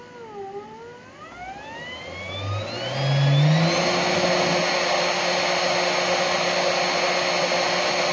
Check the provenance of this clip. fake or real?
real